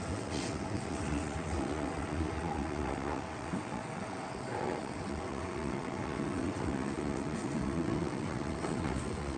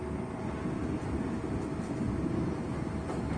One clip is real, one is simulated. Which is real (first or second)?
second